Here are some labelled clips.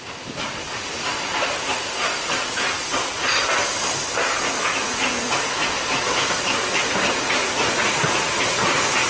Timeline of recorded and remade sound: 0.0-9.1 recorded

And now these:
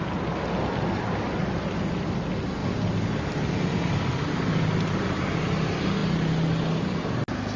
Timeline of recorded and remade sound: 0.0-7.6 recorded

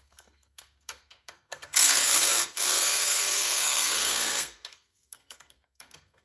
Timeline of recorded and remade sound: 0.0-6.2 remade

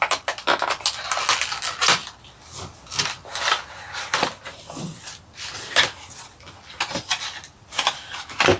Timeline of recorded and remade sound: 0.0-8.6 recorded

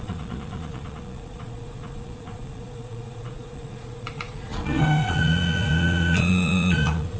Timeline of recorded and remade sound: 0.0-7.2 remade

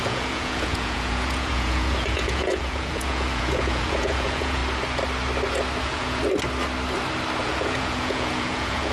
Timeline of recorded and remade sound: 0.0-4.6 remade; 4.6-5.8 recorded; 5.8-6.2 remade; 6.2-7.4 recorded; 7.4-8.9 remade

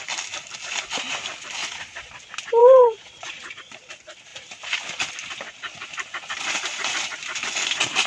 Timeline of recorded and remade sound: 0.0-1.6 recorded; 1.6-2.2 remade; 2.2-2.6 recorded; 2.6-3.5 remade; 3.5-8.1 recorded